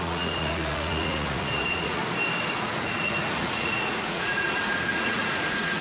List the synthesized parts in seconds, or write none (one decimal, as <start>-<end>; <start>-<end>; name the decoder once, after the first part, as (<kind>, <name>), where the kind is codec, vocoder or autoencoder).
0.0-2.0 (vocoder, Vocos); 2.5-5.8